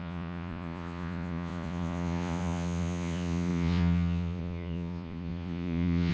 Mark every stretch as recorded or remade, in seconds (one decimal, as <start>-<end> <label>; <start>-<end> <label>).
0.0-6.1 remade